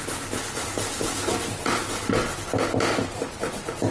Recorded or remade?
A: recorded